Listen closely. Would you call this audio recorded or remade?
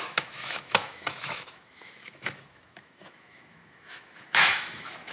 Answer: remade